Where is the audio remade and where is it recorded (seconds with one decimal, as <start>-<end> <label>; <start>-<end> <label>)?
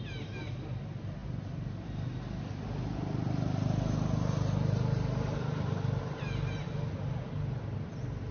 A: 0.0-8.3 recorded